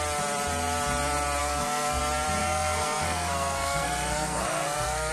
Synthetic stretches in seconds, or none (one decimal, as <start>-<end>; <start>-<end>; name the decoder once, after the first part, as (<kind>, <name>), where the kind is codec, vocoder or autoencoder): 1.4-2.0 (codec, SNAC); 2.4-5.1